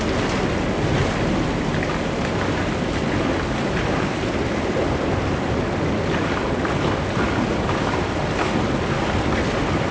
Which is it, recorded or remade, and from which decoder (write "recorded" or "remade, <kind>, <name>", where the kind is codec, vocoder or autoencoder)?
recorded